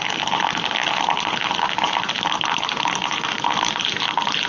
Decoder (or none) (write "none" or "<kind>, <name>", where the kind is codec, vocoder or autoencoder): none